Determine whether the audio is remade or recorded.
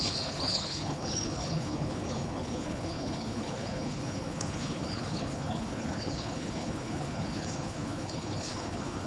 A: remade